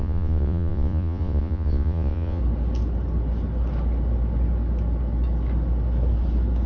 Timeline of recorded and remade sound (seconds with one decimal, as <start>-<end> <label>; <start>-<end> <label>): 0.0-2.4 remade; 2.4-6.7 recorded